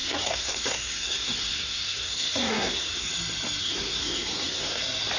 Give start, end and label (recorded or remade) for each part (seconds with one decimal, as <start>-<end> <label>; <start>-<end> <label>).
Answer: 0.0-3.1 remade; 3.1-3.6 recorded; 3.6-4.8 remade; 4.8-5.2 recorded